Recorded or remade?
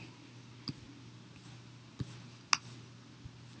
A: recorded